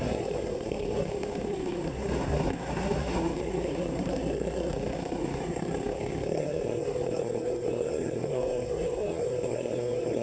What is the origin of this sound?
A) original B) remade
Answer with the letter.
B